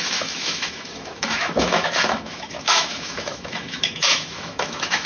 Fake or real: fake